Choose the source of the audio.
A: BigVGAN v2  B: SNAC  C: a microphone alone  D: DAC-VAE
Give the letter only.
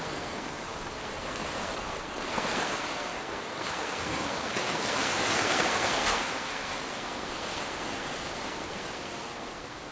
B